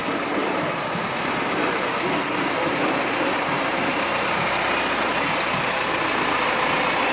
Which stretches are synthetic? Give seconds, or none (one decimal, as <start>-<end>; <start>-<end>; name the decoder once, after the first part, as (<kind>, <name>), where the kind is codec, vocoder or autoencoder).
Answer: 0.4-4.5 (vocoder, BigVGAN v2)